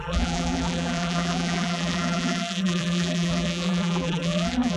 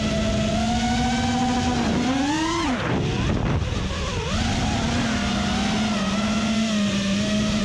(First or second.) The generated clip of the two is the first